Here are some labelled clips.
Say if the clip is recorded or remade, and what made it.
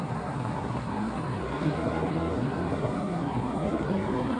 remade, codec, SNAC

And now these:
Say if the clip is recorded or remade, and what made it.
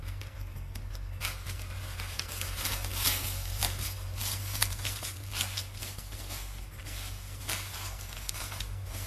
remade, codec, SNAC